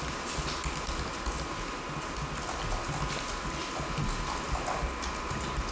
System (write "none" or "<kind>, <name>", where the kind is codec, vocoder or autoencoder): none